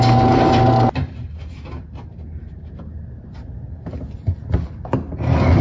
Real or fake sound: real